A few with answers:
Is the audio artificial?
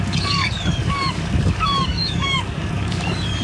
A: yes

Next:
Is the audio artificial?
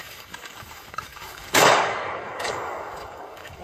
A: yes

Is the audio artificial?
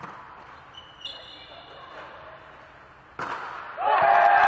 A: no